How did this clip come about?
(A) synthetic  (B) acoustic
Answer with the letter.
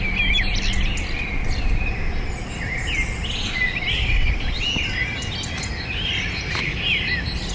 B